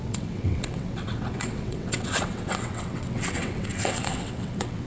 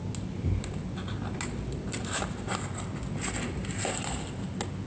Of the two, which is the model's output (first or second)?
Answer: first